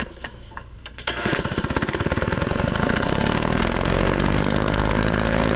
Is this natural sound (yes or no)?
no